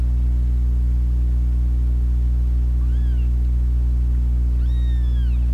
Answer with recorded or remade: recorded